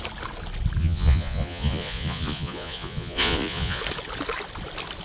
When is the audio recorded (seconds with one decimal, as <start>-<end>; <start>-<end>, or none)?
0.0-0.8; 3.8-5.0